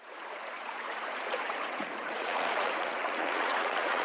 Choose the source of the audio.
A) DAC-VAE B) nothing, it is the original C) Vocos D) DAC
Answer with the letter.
C